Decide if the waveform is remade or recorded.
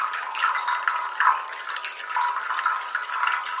recorded